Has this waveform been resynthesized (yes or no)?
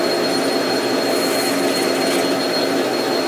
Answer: no